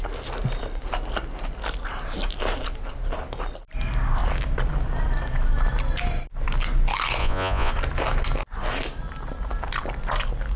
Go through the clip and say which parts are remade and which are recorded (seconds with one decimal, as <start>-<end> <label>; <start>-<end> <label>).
0.0-7.2 recorded; 7.2-7.7 remade; 7.7-10.6 recorded